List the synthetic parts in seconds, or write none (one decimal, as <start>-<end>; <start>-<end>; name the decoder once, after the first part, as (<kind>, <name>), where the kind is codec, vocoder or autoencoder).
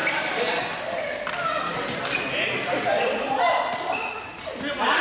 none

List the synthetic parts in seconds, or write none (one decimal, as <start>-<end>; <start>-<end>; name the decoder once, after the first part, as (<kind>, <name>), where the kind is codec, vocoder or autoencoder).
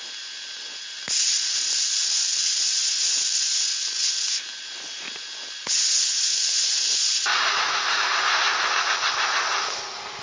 5.6-6.3 (vocoder, Vocos); 7.3-8.0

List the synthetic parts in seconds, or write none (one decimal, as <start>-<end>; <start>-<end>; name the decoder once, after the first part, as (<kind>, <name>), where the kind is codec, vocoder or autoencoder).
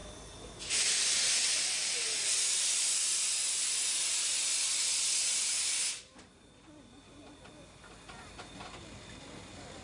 none